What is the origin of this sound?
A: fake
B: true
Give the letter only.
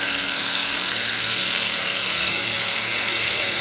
A